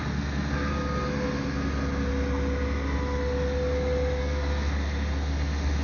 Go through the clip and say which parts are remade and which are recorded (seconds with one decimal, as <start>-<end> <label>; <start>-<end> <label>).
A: 0.0-0.7 remade; 0.7-4.2 recorded; 4.2-5.8 remade